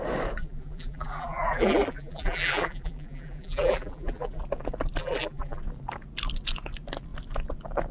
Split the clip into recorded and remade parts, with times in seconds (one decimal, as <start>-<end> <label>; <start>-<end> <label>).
0.0-0.4 recorded; 0.4-4.4 remade; 4.4-5.0 recorded; 5.0-5.6 remade; 5.6-7.9 recorded